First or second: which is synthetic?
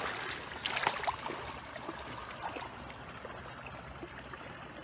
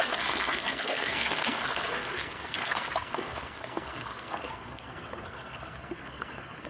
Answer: second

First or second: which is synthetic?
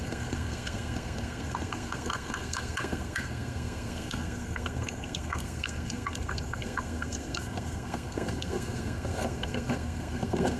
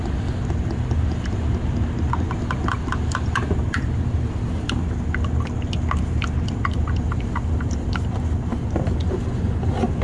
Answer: first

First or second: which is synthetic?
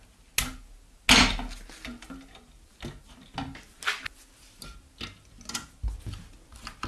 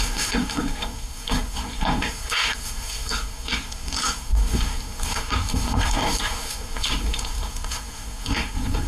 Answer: second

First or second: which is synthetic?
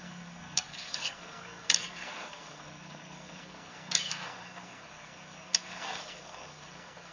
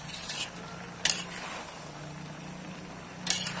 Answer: first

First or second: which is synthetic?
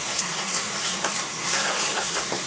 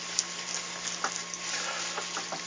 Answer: first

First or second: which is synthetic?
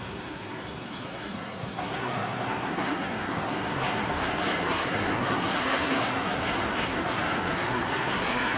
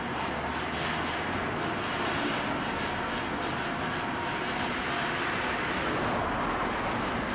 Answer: first